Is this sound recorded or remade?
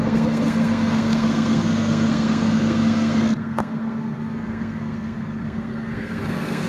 remade